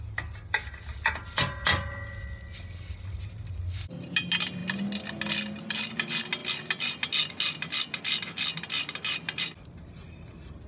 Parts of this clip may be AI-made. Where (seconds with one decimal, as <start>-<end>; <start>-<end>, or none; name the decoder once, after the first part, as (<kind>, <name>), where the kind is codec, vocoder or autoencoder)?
none